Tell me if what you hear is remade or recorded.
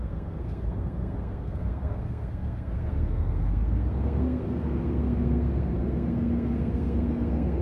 remade